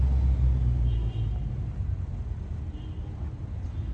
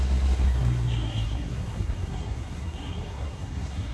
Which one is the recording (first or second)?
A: first